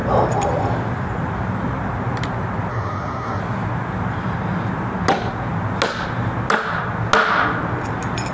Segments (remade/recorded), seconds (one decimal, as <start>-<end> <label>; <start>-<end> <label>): 0.0-2.7 recorded; 2.7-3.4 remade; 3.4-8.3 recorded